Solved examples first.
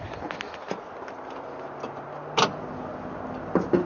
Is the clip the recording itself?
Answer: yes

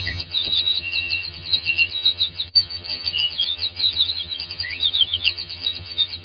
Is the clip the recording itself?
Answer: no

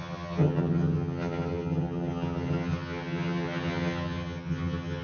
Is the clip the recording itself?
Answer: no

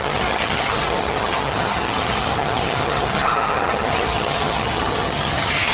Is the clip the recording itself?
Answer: no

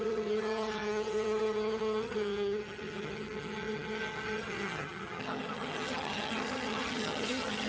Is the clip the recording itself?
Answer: no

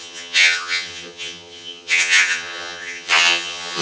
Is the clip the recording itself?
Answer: no